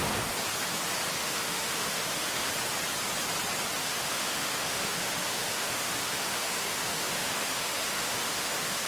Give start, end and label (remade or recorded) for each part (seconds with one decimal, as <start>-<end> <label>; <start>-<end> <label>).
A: 0.0-1.2 recorded; 1.2-2.5 remade; 2.5-3.8 recorded; 3.8-8.9 remade